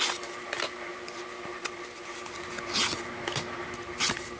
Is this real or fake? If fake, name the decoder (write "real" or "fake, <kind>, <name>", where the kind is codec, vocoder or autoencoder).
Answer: real